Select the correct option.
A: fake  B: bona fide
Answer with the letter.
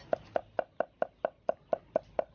B